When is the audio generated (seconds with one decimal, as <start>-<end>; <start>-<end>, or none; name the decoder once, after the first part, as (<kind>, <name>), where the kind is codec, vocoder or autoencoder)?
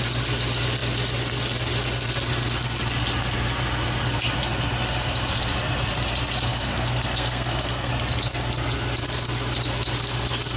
6.5-7.9 (codec, SNAC)